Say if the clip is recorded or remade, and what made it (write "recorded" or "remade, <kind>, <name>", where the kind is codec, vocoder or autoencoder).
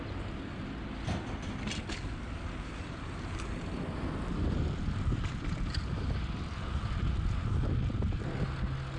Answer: recorded